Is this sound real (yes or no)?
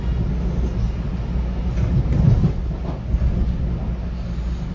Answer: yes